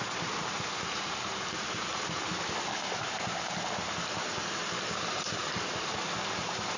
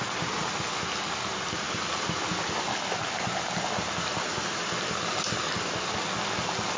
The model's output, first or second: first